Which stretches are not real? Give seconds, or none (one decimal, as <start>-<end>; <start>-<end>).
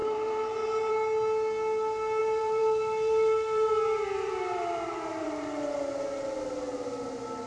0.0-0.9; 2.2-6.0